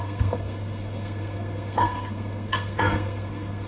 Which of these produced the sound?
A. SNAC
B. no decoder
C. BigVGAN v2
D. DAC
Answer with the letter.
A